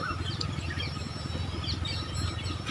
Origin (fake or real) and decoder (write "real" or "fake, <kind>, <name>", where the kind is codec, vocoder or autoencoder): real